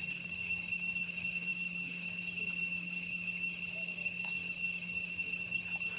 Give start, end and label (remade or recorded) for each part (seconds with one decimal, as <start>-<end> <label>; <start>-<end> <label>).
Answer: 0.0-6.0 remade